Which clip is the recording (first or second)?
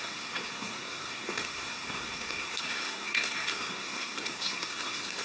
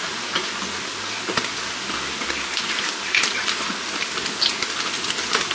second